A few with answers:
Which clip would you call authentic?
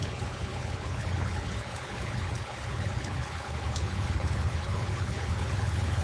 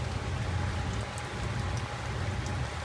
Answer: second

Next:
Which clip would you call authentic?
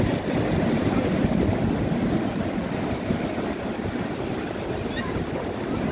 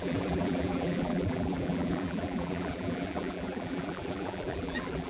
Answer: first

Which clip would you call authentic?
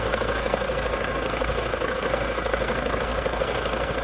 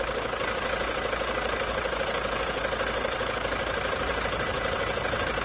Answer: second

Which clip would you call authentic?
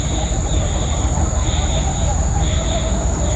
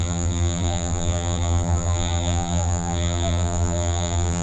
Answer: first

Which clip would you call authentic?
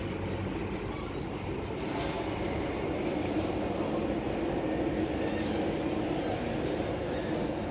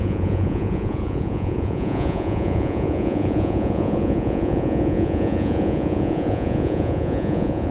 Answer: first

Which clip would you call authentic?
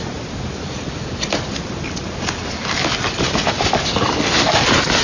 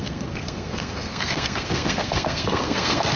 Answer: first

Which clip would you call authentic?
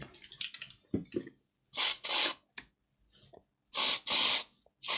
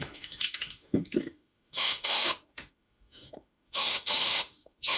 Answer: first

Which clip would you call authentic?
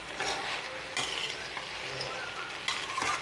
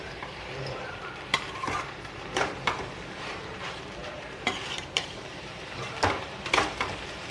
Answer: first